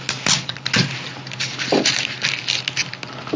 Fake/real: real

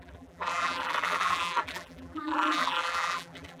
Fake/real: fake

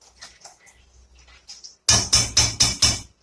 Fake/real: real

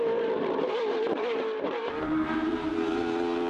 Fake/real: fake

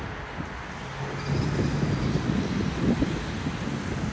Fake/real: real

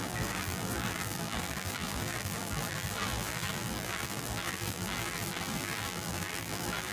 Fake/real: fake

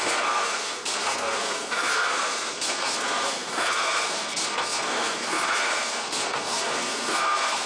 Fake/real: fake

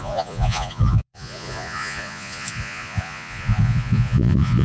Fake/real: fake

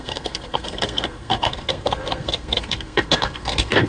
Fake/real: fake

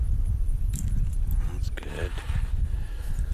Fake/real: real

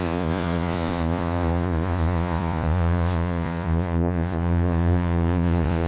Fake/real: fake